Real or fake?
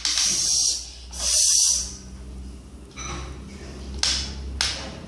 real